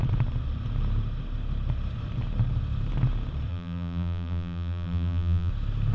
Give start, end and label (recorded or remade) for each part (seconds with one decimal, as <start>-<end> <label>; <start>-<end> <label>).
0.0-3.5 recorded; 3.5-5.5 remade; 5.5-5.9 recorded

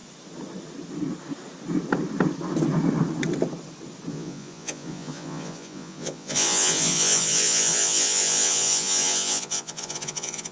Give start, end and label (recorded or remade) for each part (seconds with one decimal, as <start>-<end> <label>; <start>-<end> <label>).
0.0-4.1 recorded; 4.1-10.5 remade

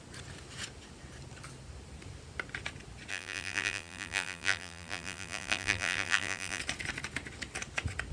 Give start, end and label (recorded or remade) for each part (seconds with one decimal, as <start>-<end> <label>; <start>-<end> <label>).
0.0-3.1 recorded; 3.1-6.6 remade; 6.6-8.1 recorded

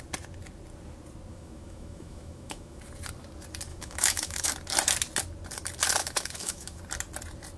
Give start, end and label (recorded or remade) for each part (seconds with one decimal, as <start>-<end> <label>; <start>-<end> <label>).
0.0-1.3 recorded; 1.3-2.8 remade; 2.8-3.7 recorded; 3.7-4.5 remade; 4.5-6.0 recorded; 6.0-6.8 remade; 6.8-7.6 recorded

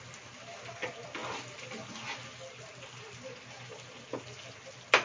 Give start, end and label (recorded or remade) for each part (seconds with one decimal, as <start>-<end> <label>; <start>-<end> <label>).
0.0-5.0 recorded

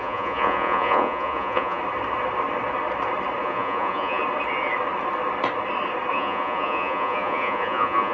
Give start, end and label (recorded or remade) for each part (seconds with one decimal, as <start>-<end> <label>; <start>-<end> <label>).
0.0-1.8 remade; 1.8-3.4 recorded; 3.4-4.2 remade; 4.2-6.1 recorded; 6.1-8.1 remade